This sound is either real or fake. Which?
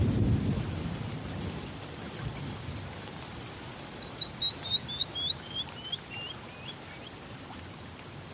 real